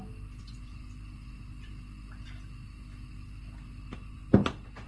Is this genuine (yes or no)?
yes